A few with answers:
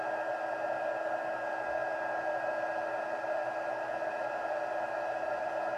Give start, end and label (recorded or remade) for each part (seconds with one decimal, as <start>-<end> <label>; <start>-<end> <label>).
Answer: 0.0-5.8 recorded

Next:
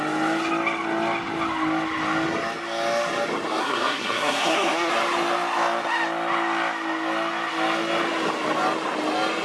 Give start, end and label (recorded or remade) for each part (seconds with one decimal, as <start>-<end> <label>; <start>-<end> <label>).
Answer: 0.0-3.6 recorded; 3.6-4.9 remade; 4.9-9.4 recorded

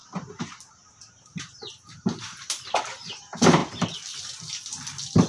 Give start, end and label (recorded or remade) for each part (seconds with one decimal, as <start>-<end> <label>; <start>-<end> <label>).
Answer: 0.0-3.2 remade; 3.2-5.3 recorded